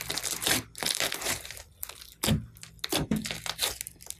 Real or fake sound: real